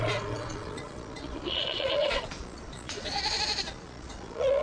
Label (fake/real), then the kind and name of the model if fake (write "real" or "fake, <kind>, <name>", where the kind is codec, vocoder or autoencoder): fake, vocoder, Vocos